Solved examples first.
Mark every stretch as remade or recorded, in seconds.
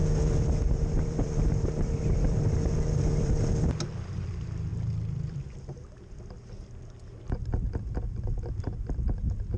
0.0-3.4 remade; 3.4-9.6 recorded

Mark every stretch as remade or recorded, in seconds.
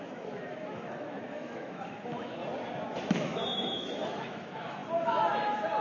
0.0-2.4 remade; 2.4-3.1 recorded; 3.1-4.8 remade; 4.8-5.8 recorded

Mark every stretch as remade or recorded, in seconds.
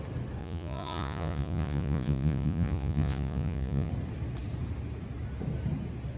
0.0-0.4 recorded; 0.4-3.9 remade; 3.9-6.2 recorded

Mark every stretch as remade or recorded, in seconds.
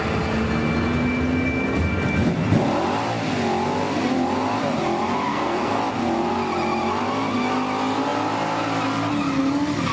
0.0-5.3 recorded; 5.3-5.8 remade; 5.8-9.9 recorded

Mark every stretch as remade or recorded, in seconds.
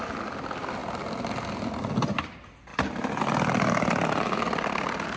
0.0-5.2 recorded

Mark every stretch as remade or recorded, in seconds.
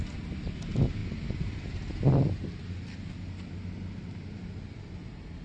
0.0-5.4 recorded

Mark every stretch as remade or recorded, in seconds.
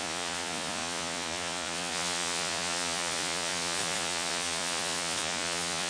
0.0-5.9 remade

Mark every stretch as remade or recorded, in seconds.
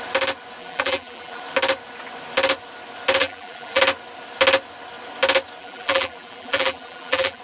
0.0-0.6 recorded; 0.6-1.4 remade; 1.4-3.2 recorded; 3.2-3.8 remade; 3.8-5.6 recorded; 5.6-7.4 remade